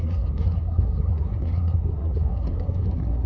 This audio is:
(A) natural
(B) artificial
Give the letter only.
B